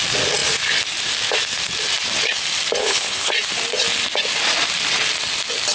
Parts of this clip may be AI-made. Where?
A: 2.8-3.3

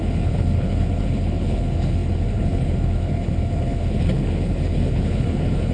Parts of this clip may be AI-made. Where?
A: 0.0-5.7

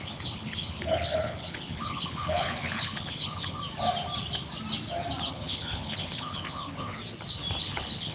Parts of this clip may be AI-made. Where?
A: 0.0-3.6; 5.3-7.0; 7.6-8.1

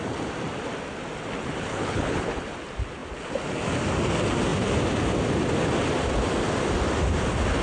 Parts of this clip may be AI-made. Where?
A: 1.7-2.5

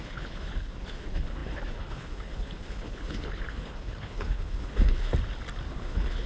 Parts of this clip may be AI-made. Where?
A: 0.0-5.1; 5.7-6.3